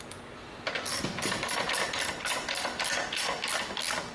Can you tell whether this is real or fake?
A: real